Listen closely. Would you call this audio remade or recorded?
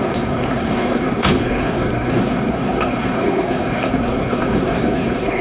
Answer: remade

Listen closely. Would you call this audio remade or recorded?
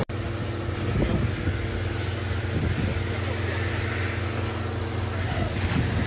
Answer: recorded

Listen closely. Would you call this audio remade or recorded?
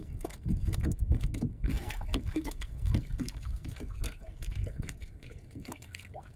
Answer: remade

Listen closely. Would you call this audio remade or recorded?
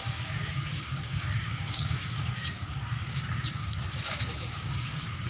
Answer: remade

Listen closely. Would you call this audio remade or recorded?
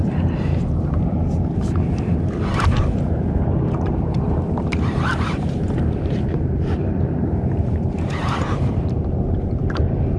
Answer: remade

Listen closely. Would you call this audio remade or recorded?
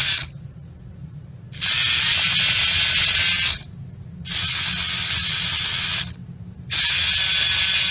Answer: recorded